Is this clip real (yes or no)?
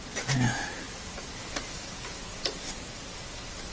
yes